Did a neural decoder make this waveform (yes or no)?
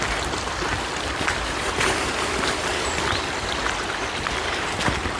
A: no